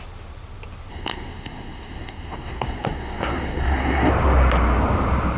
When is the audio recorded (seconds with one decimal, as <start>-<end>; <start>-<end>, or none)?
0.0-0.9; 4.1-5.4